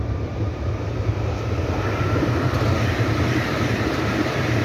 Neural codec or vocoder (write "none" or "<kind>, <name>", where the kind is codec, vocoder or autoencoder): vocoder, BigVGAN v2